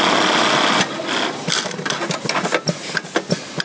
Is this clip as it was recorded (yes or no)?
yes